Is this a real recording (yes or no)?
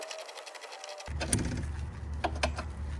yes